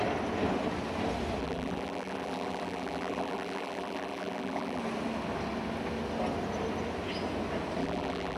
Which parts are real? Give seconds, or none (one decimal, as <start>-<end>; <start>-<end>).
0.0-1.4; 4.8-7.8